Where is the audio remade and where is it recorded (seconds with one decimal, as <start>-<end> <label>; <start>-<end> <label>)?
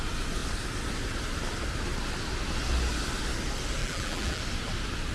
0.0-3.8 recorded; 3.8-4.4 remade; 4.4-5.1 recorded